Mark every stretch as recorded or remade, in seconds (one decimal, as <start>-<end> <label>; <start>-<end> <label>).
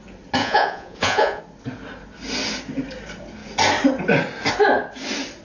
0.0-0.4 recorded; 0.4-1.4 remade; 1.4-5.4 recorded